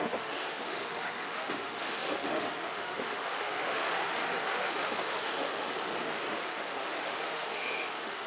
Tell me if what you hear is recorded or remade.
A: remade